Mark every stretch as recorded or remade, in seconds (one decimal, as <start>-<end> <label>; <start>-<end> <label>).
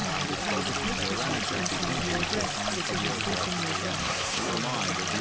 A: 0.0-4.0 recorded; 4.0-4.5 remade; 4.5-5.2 recorded